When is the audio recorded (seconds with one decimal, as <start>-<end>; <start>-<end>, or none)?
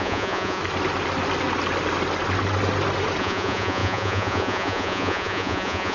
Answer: 0.6-3.2